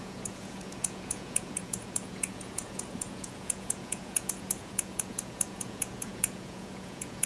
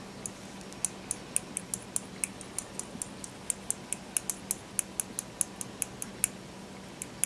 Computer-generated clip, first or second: first